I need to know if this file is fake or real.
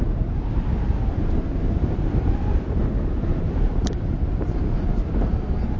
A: fake